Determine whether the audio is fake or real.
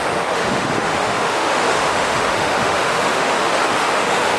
fake